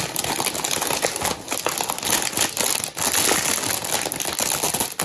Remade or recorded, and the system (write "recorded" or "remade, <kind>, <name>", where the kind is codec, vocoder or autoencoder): recorded